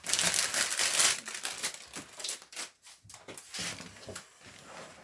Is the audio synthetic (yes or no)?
no